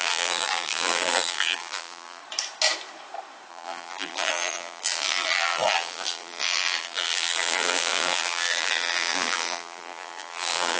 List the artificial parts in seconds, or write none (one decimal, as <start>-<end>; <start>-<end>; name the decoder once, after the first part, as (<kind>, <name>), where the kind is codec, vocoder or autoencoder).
0.0-2.2 (vocoder, BigVGAN v2); 3.5-10.8